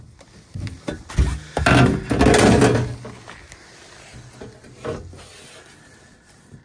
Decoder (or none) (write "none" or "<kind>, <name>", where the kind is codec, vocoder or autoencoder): none